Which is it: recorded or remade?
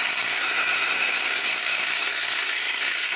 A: remade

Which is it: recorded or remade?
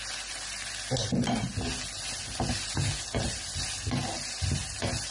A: recorded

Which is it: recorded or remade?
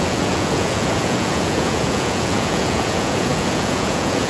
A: remade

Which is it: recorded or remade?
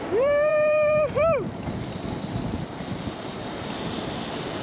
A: remade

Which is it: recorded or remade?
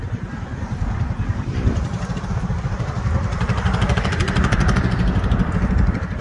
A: remade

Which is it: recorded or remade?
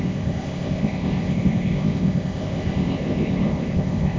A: remade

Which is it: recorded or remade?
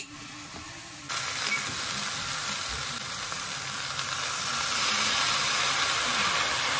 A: recorded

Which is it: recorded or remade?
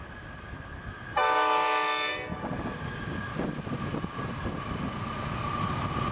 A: recorded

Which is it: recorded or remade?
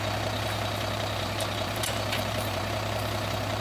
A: remade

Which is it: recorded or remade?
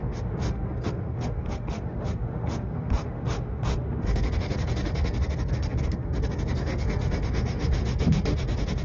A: remade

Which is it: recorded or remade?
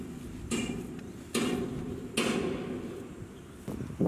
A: recorded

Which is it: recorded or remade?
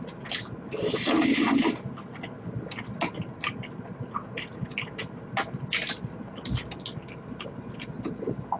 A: recorded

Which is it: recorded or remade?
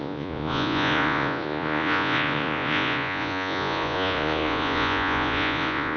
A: remade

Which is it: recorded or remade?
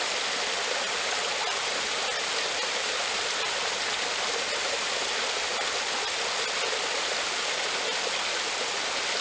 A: recorded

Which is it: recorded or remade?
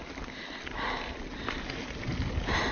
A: recorded